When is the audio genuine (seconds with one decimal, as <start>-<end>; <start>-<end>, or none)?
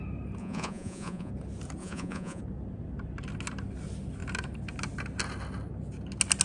0.0-0.4; 1.3-1.8; 2.4-6.4